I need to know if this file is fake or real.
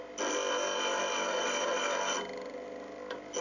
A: real